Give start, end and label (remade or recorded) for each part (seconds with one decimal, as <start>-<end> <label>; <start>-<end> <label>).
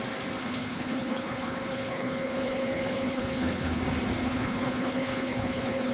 0.0-0.4 recorded; 0.4-3.8 remade; 3.8-4.2 recorded; 4.2-5.9 remade